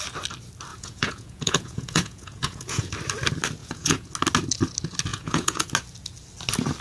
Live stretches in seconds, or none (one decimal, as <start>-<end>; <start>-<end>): 0.0-0.7; 2.9-3.6; 4.1-5.1; 5.7-6.8

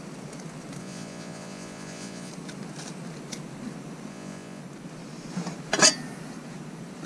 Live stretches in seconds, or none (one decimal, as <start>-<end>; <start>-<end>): 0.0-0.8; 2.3-4.1; 4.6-7.1

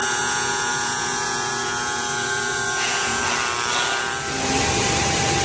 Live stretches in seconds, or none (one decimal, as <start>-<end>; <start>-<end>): 3.2-5.4

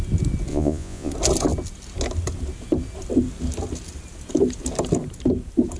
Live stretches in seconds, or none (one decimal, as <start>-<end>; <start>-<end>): 0.0-0.5; 1.1-5.8

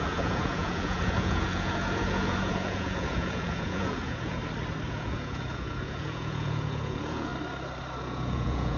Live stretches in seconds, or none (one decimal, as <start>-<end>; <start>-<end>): 4.4-4.9; 7.3-8.0

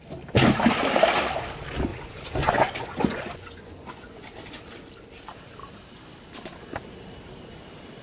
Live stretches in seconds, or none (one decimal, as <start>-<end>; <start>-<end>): 0.0-1.9; 4.3-8.0

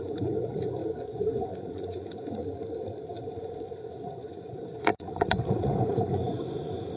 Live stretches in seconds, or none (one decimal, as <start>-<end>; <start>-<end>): 2.4-3.2